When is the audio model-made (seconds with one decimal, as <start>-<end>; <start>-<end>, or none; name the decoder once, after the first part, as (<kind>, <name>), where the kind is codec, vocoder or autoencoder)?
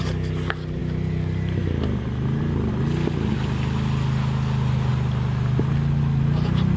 none